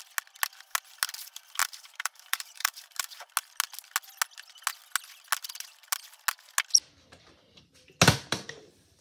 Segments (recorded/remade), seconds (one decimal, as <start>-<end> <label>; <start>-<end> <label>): 0.0-1.6 recorded; 1.6-3.3 remade; 3.3-9.0 recorded